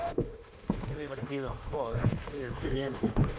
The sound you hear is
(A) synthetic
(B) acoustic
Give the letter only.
A